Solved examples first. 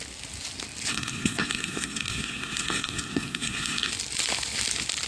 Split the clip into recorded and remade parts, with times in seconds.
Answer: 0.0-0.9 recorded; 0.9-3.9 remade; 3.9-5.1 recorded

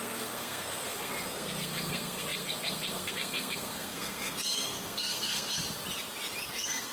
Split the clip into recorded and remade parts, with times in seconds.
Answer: 0.0-5.6 remade; 5.6-6.4 recorded; 6.4-6.9 remade

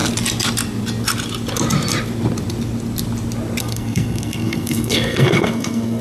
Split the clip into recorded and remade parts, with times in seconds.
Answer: 0.0-3.6 recorded; 3.6-6.0 remade

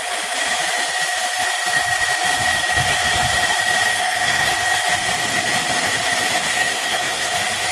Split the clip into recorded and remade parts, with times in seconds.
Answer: 0.0-3.9 recorded; 3.9-4.5 remade; 4.5-6.5 recorded; 6.5-7.3 remade; 7.3-7.7 recorded

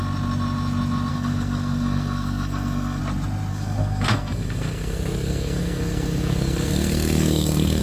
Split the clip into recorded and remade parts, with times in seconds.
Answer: 0.0-1.1 recorded; 1.1-3.0 remade; 3.0-3.5 recorded; 3.5-7.8 remade

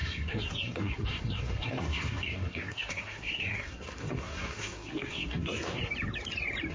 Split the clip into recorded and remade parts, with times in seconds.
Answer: 0.0-5.8 remade; 5.8-6.7 recorded

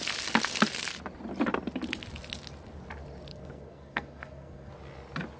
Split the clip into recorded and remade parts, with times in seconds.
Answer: 0.0-3.3 recorded; 3.3-4.7 remade; 4.7-5.4 recorded

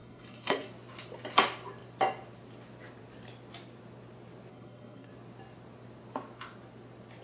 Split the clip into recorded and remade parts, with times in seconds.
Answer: 0.0-0.7 remade; 0.7-4.5 recorded; 4.5-5.1 remade; 5.1-7.2 recorded